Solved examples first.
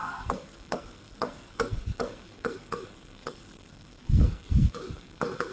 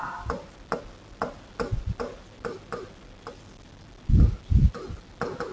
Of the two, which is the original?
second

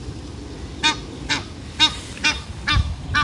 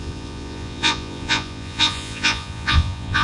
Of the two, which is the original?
first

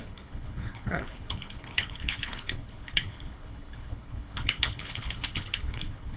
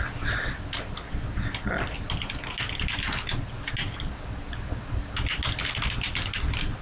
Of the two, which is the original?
second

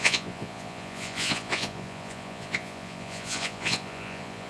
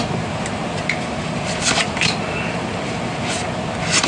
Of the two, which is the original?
second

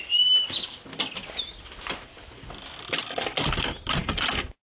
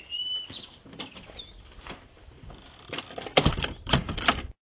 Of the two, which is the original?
first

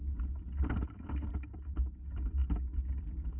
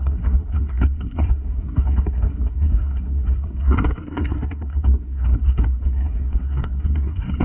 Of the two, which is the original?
first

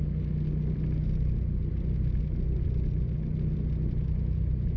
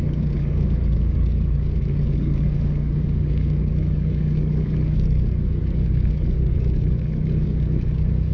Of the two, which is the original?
first